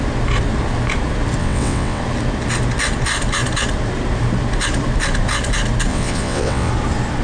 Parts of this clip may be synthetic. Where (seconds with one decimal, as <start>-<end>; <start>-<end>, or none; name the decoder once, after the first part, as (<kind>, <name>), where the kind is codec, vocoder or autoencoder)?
1.4-2.0 (vocoder, WaveNeXt); 5.9-6.7